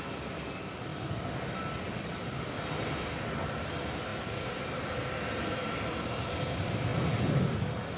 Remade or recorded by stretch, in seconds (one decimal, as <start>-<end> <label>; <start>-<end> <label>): 0.0-8.0 recorded